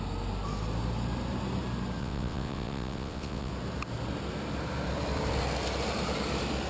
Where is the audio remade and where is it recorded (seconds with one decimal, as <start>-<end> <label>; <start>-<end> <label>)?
0.0-2.0 recorded; 2.0-3.5 remade; 3.5-6.7 recorded